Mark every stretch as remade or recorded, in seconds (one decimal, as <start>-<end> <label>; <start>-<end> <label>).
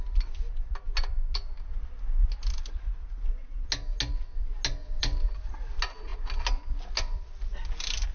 0.0-4.8 recorded; 4.8-5.5 remade; 5.5-8.1 recorded